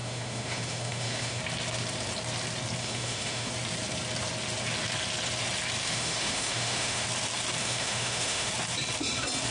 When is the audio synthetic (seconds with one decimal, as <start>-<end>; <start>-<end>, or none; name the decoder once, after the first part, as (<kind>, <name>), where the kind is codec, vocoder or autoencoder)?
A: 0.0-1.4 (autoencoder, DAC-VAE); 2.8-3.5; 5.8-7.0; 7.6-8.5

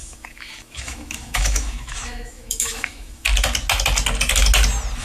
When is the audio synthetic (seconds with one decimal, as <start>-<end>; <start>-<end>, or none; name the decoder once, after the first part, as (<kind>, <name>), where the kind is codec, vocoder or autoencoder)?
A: 0.0-3.3 (autoencoder, DAC-VAE)

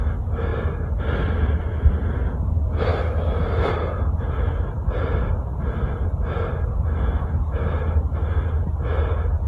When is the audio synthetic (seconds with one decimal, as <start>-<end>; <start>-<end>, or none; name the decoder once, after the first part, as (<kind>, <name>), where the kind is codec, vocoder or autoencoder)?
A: 2.9-3.7 (autoencoder, DAC-VAE)

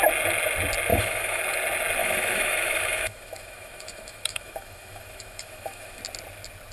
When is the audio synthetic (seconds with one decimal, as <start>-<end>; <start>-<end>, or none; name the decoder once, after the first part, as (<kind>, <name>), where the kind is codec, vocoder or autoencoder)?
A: 0.9-1.4 (autoencoder, DAC-VAE); 2.0-6.0

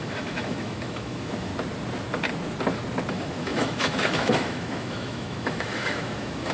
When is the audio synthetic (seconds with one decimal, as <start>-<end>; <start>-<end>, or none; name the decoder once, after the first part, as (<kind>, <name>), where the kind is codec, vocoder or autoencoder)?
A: 0.0-1.5 (autoencoder, DAC-VAE); 3.1-6.5